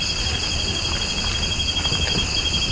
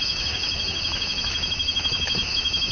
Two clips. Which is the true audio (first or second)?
first